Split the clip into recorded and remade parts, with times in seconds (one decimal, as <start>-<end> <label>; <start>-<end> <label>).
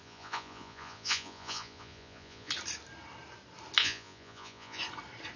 0.0-2.5 remade; 2.5-3.8 recorded; 3.8-4.8 remade; 4.8-5.4 recorded